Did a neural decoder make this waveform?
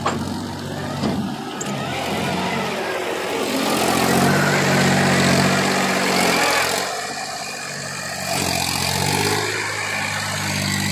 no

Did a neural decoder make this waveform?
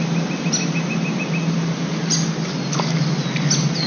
no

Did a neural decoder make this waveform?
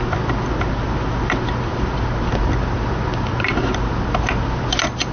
no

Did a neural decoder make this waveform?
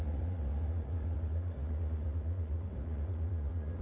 yes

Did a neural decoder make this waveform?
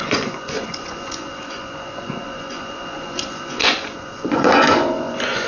yes